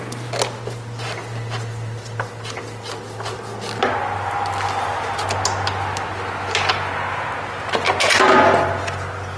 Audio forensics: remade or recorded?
recorded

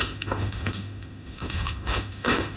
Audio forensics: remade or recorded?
remade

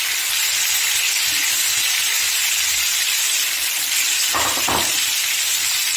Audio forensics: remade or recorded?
recorded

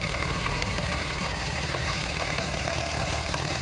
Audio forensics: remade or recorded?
remade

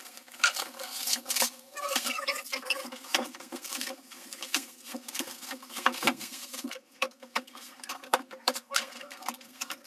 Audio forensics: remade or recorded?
remade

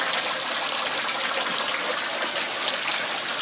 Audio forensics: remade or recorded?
recorded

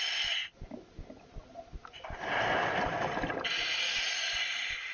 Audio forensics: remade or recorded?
recorded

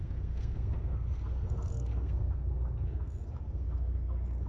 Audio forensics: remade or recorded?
remade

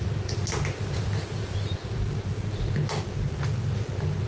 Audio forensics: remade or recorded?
recorded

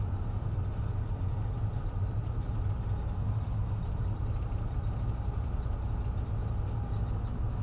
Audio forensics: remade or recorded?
recorded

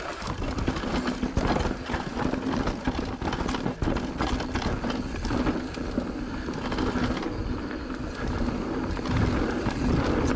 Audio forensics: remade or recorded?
recorded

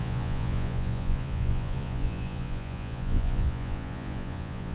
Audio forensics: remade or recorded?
remade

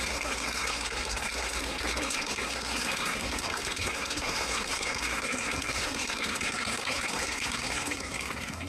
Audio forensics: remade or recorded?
remade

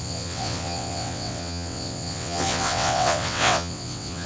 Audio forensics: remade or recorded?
remade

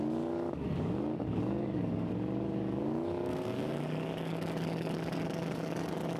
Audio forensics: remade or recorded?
remade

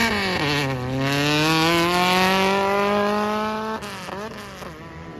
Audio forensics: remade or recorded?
recorded